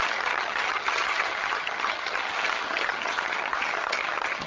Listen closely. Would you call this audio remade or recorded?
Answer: remade